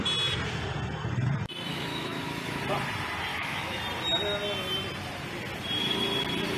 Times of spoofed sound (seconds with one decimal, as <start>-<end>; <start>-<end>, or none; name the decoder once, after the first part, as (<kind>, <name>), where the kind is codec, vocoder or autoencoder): 1.7-2.6 (autoencoder, DAC-VAE); 3.3-3.8